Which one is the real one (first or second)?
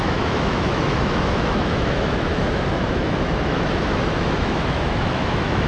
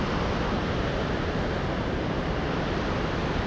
second